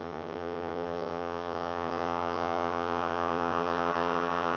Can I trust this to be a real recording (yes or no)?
no